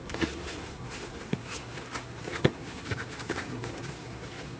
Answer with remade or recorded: remade